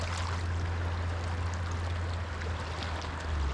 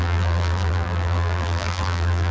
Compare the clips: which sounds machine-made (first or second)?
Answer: second